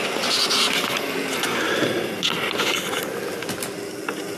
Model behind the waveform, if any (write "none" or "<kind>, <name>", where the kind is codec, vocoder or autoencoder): none